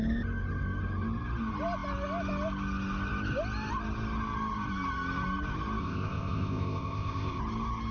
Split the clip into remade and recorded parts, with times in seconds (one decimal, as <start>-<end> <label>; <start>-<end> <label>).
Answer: 0.0-5.8 recorded; 5.8-7.4 remade; 7.4-7.9 recorded